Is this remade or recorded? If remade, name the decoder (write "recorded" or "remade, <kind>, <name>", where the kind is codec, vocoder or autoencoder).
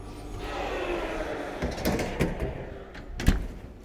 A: recorded